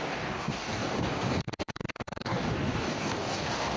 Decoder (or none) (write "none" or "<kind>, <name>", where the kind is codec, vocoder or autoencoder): codec, DAC